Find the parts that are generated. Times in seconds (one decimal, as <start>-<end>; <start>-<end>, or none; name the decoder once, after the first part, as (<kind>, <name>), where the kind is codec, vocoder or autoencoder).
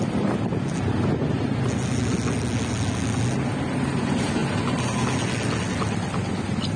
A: none